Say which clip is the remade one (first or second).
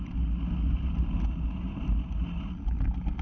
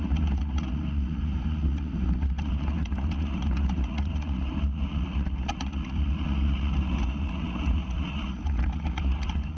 second